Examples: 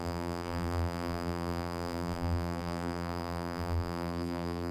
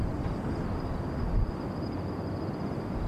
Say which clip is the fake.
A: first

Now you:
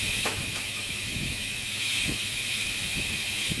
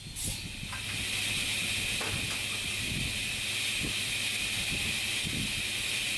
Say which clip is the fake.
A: first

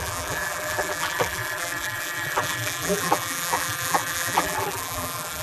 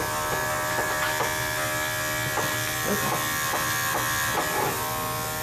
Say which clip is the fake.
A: first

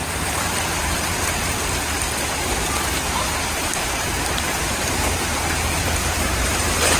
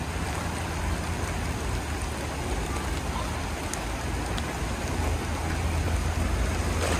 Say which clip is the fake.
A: first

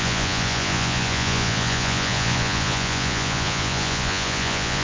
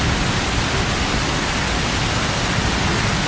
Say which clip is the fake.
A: first